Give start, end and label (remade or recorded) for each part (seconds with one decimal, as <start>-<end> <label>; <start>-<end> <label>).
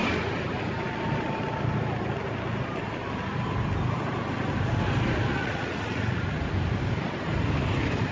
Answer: 0.0-5.3 recorded; 5.3-6.2 remade; 6.2-8.1 recorded